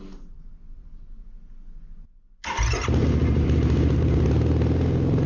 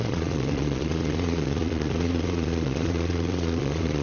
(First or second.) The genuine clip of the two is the first